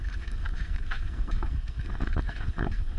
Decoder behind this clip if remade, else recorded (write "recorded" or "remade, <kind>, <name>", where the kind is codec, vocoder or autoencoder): remade, codec, SNAC